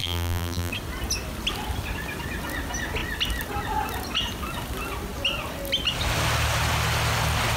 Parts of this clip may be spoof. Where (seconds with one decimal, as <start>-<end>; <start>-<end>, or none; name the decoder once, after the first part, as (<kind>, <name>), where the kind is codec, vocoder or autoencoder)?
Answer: 0.0-0.7 (vocoder, BigVGAN v2)